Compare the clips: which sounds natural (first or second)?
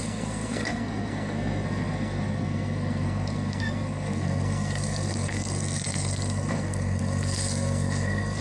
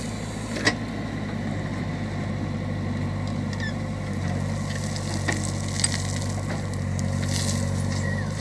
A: second